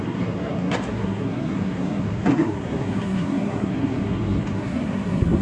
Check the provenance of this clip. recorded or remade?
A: remade